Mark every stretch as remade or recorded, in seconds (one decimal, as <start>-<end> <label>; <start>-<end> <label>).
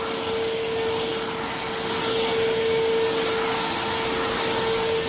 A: 0.0-5.1 recorded